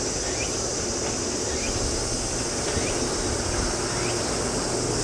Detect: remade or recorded recorded